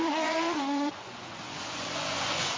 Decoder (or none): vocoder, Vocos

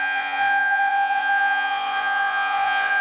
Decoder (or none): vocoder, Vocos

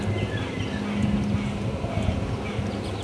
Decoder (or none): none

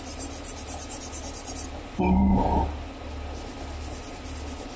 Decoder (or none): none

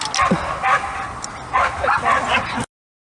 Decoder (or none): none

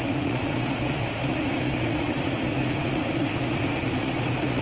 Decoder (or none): vocoder, Vocos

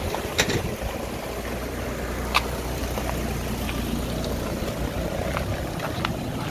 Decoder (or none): none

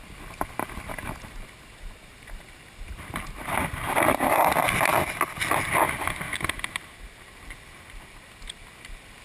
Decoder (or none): none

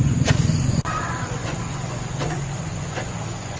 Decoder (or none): vocoder, Vocos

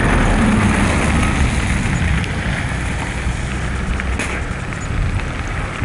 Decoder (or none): none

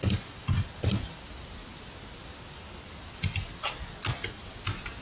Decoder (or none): none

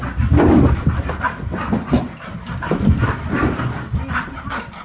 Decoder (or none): none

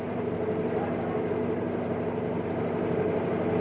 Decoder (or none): none